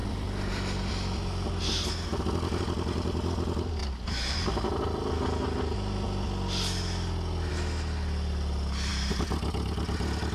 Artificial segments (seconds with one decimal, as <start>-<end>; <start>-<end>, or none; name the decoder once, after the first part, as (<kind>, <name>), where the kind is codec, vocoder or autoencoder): none